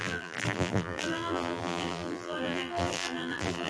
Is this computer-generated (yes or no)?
yes